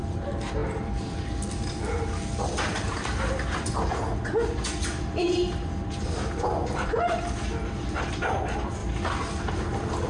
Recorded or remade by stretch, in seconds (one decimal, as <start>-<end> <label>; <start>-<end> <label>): 0.0-10.1 recorded